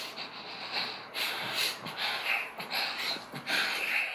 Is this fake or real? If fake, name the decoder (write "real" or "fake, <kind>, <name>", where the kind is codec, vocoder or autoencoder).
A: fake, vocoder, BigVGAN v2